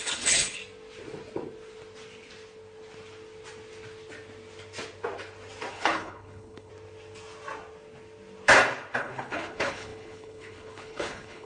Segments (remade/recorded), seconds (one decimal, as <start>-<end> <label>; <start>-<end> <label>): 0.0-0.6 remade; 0.6-5.7 recorded; 5.7-6.7 remade; 6.7-9.0 recorded; 9.0-11.5 remade